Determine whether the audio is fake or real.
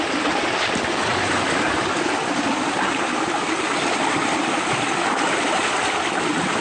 fake